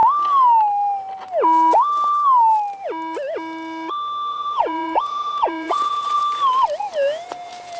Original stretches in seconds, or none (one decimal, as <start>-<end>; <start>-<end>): 0.0-4.3; 6.2-6.8